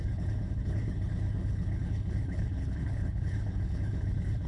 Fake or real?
fake